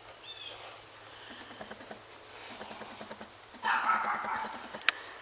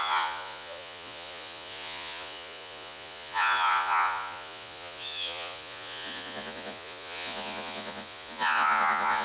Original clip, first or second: first